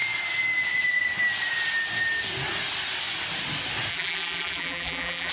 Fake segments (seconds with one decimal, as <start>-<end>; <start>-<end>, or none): 3.9-5.3